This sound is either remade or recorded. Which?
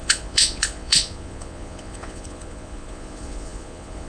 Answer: remade